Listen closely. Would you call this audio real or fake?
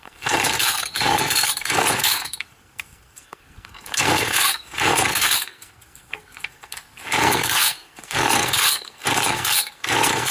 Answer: fake